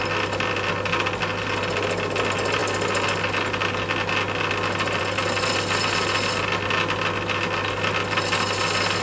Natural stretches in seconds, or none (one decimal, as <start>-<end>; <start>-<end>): 0.0-9.0